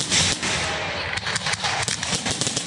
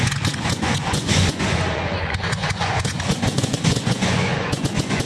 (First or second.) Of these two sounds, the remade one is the second